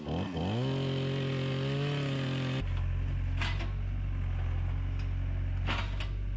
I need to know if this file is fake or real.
real